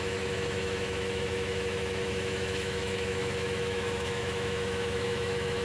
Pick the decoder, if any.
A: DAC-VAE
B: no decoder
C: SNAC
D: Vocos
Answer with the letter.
A